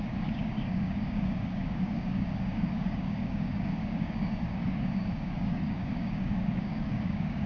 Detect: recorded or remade remade